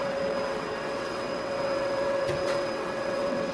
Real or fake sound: fake